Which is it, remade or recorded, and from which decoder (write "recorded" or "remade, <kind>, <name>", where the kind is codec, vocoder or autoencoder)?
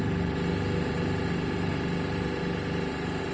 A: recorded